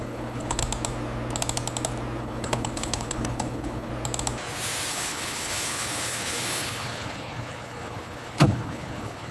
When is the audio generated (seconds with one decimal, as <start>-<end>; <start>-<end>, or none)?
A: 0.0-0.6; 2.2-3.9; 4.9-9.3